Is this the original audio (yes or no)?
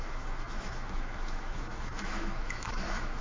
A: no